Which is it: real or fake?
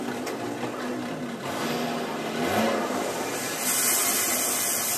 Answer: real